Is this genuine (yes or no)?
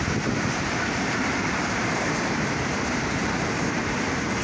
no